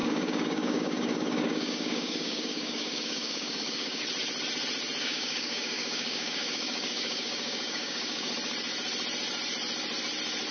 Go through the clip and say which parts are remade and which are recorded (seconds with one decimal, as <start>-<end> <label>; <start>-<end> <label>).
0.0-4.0 remade; 4.0-5.0 recorded; 5.0-8.3 remade; 8.3-10.5 recorded